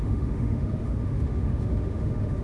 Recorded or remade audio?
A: remade